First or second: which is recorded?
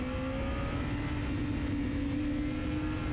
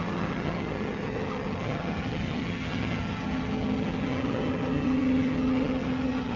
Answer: first